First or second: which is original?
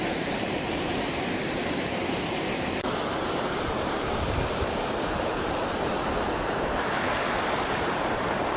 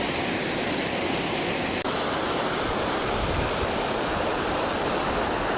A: second